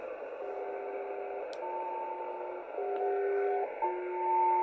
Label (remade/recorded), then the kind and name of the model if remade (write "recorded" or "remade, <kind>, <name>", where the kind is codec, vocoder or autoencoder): recorded